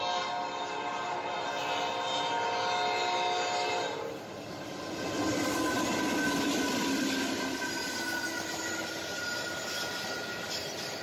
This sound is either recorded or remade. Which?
recorded